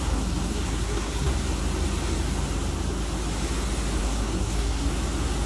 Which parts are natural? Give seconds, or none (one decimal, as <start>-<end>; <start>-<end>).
1.3-4.0; 4.9-5.5